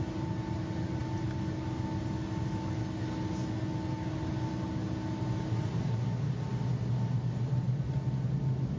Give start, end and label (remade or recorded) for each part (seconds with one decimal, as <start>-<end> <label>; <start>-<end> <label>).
0.0-8.8 recorded